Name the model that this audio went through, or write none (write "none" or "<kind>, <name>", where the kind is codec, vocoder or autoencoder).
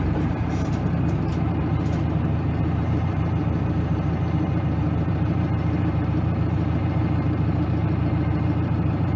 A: vocoder, BigVGAN v2